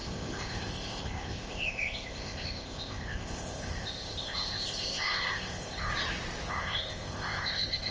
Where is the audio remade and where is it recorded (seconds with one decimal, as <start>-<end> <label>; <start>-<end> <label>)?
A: 0.0-5.9 remade; 5.9-6.5 recorded; 6.5-7.9 remade